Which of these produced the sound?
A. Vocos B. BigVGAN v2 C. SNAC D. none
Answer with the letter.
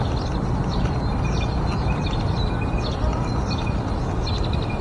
D